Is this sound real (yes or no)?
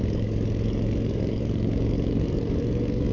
no